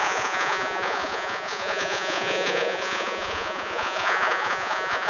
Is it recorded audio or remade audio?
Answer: remade